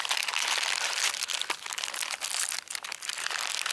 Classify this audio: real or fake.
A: real